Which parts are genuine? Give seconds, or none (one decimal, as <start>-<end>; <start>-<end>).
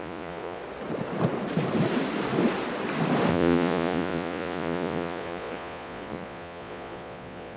0.6-3.3